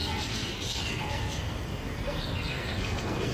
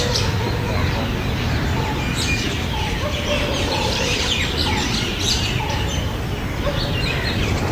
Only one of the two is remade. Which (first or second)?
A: first